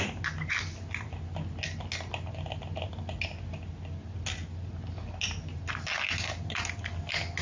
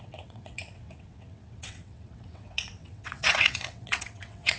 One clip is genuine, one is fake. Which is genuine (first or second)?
first